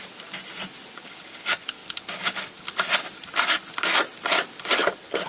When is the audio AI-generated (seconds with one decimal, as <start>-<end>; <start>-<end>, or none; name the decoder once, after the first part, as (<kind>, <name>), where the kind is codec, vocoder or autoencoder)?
none